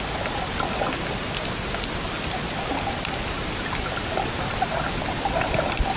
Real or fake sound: real